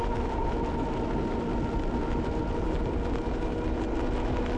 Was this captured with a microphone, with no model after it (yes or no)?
yes